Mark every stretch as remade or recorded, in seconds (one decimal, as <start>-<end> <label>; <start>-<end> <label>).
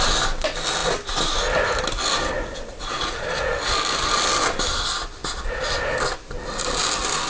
0.0-7.3 recorded